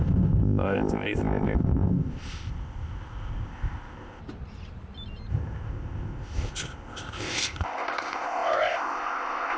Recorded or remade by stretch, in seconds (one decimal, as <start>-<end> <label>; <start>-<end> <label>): 0.0-4.2 remade; 4.2-5.3 recorded; 5.3-9.6 remade